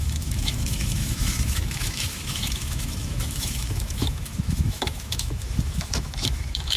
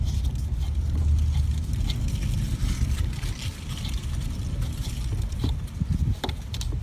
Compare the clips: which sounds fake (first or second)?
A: first